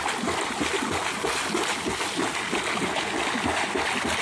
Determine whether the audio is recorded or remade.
recorded